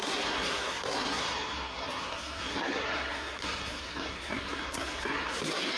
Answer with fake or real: fake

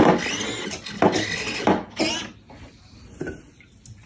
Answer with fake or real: real